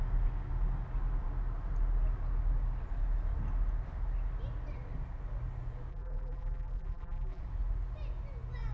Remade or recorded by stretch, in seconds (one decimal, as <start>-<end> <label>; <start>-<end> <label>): 0.0-5.9 recorded; 5.9-7.4 remade; 7.4-8.7 recorded